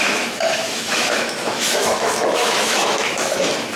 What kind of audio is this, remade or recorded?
remade